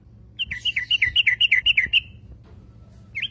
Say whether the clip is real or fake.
real